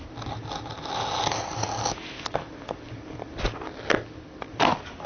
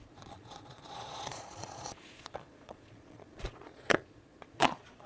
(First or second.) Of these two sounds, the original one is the first